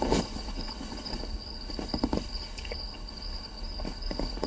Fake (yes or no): yes